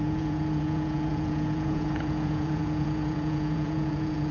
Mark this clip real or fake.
fake